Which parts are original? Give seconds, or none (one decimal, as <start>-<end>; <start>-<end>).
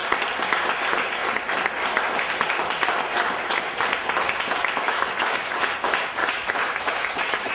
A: 0.0-4.8; 5.6-6.2